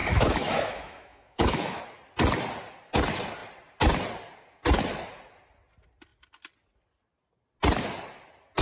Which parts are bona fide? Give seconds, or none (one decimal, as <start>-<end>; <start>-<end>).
1.8-8.6